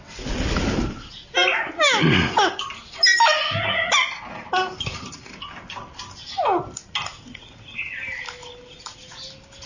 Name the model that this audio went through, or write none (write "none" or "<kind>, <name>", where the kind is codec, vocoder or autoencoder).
none